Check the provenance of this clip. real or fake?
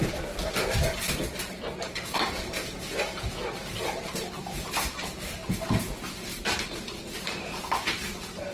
real